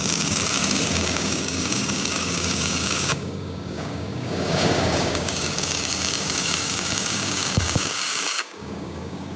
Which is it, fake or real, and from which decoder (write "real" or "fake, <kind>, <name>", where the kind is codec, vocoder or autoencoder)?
fake, codec, DAC